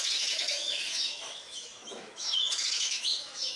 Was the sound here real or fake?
fake